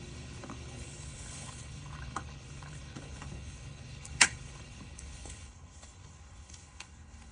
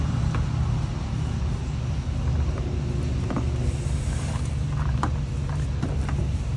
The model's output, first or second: first